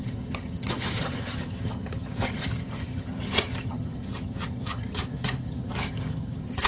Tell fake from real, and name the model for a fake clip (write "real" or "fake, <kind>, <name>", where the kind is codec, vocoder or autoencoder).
fake, vocoder, HiFi-GAN